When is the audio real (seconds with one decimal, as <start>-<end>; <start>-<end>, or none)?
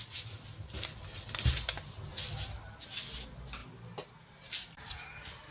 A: 0.0-5.5